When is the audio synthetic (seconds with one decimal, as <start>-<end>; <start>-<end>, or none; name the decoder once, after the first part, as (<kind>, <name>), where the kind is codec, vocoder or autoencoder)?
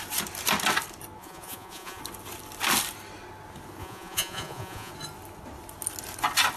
1.2-2.0 (vocoder, Vocos); 3.8-4.9